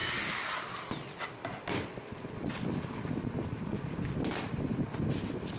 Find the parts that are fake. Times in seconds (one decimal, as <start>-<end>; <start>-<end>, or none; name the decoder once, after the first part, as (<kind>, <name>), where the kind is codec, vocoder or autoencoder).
none